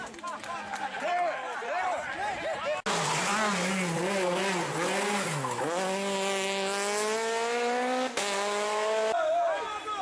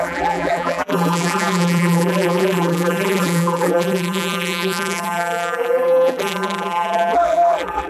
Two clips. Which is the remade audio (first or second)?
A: second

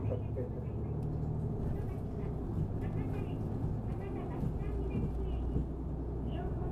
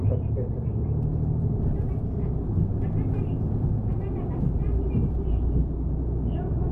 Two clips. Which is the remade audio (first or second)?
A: second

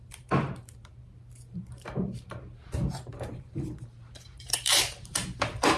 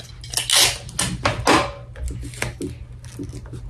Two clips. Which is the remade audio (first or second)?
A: first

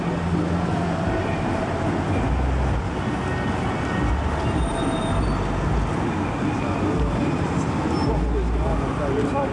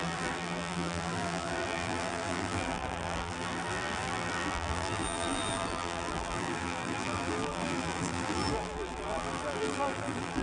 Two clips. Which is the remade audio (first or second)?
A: second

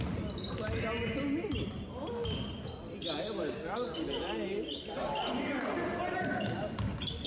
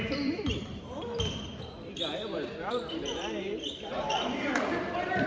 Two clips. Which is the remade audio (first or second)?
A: second